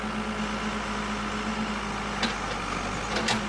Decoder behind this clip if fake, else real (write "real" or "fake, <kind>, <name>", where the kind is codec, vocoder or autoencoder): real